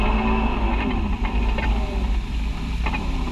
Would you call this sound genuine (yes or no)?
yes